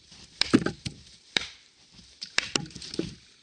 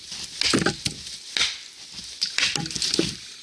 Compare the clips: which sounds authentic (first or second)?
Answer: second